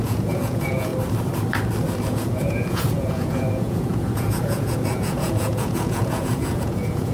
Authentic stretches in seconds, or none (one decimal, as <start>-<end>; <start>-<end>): 0.9-2.0